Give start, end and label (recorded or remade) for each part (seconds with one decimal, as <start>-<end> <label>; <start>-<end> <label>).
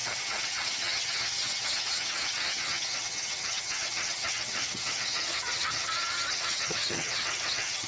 0.0-7.9 remade